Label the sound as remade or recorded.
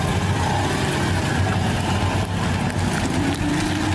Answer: recorded